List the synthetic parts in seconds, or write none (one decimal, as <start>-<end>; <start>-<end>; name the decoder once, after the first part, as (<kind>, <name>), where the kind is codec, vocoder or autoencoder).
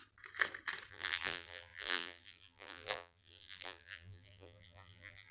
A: 0.9-5.3 (vocoder, BigVGAN v2)